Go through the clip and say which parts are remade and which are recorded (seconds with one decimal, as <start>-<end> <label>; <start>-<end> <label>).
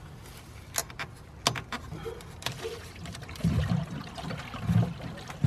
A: 0.0-5.5 recorded